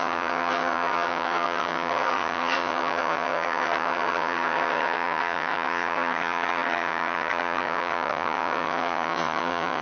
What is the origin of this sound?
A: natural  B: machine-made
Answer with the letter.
B